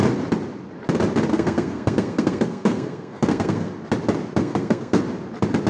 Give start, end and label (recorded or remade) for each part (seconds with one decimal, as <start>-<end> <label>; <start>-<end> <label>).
0.0-1.3 recorded; 1.3-3.7 remade; 3.7-4.4 recorded; 4.4-5.0 remade; 5.0-5.7 recorded